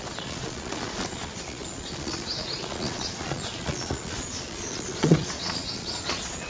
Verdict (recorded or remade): remade